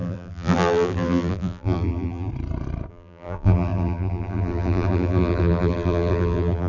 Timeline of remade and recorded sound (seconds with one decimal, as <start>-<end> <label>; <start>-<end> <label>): 0.0-2.3 remade; 2.3-2.9 recorded; 2.9-6.7 remade